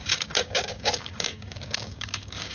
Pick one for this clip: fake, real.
fake